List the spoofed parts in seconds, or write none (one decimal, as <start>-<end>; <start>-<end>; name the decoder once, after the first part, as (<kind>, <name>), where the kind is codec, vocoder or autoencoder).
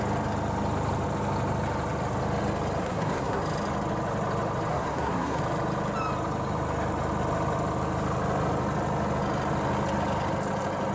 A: 2.8-3.4 (codec, SNAC); 4.7-5.4